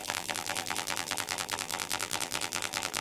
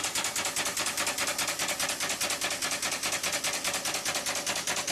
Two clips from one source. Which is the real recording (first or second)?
second